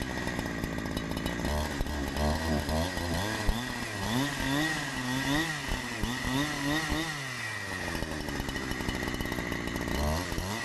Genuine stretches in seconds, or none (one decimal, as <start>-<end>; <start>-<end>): 0.0-10.6